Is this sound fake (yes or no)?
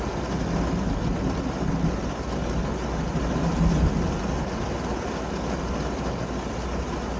no